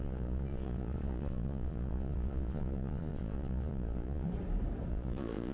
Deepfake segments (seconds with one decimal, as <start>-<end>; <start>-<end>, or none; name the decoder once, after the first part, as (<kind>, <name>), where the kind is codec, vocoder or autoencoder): 0.0-4.3 (vocoder, Vocos); 4.9-5.5